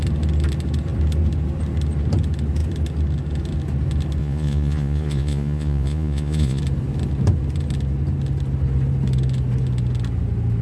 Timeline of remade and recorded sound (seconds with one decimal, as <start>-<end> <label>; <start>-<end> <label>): 0.0-4.2 recorded; 4.2-6.6 remade; 6.6-10.6 recorded